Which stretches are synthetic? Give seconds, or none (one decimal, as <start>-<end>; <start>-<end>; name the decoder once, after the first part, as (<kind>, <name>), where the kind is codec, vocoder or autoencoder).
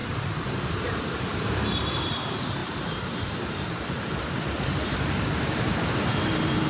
0.0-6.7 (vocoder, BigVGAN v2)